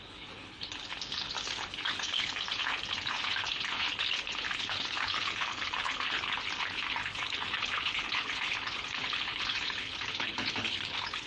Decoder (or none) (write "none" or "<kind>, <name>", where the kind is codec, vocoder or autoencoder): codec, HILCodec